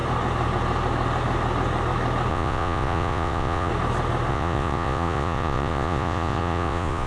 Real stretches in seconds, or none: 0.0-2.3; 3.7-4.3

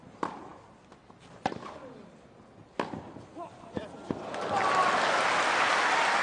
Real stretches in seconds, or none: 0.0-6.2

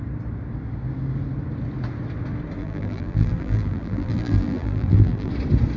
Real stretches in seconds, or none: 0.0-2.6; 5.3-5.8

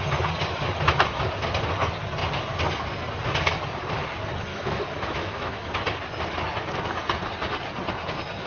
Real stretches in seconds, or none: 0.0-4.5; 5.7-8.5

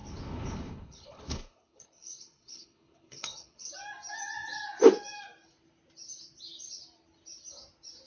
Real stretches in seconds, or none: 3.7-8.1

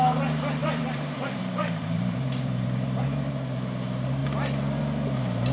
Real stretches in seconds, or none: 0.0-0.6; 3.3-5.5

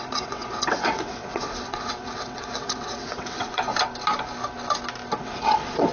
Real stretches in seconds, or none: 3.7-5.2